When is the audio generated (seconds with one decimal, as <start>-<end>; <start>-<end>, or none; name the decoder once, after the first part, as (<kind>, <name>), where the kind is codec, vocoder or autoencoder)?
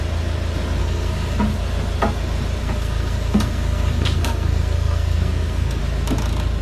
0.8-1.4 (codec, SNAC); 2.6-5.8